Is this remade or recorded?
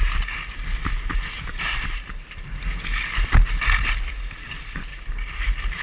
recorded